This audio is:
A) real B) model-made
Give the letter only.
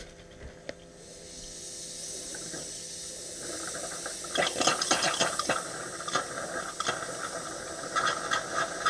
A